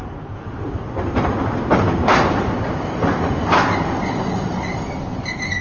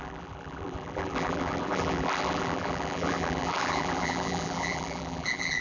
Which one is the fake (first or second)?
second